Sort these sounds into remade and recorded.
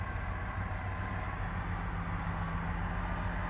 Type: recorded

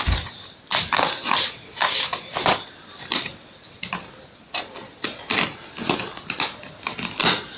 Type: recorded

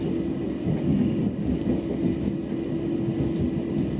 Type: recorded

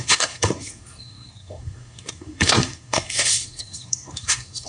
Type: remade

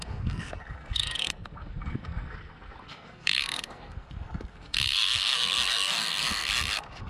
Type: remade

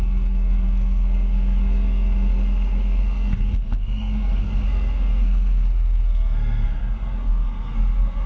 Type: remade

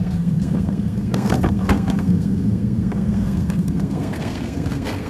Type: remade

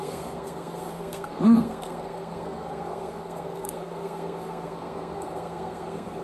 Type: remade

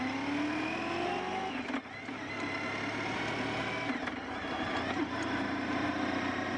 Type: recorded